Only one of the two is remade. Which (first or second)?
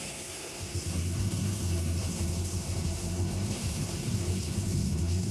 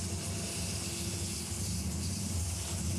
first